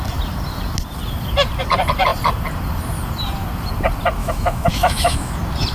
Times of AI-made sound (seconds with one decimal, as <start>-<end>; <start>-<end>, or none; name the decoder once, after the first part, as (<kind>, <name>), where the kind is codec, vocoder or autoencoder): 4.2-5.3 (autoencoder, DAC-VAE)